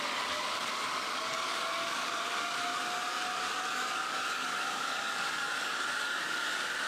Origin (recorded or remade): remade